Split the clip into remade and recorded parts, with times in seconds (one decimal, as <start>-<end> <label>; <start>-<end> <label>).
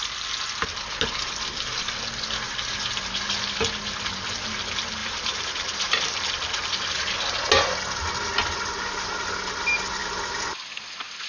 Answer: 0.0-5.0 recorded; 5.0-6.3 remade; 6.3-11.3 recorded